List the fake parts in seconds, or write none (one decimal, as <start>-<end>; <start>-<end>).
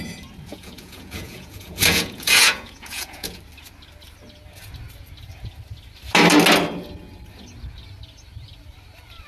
0.5-3.4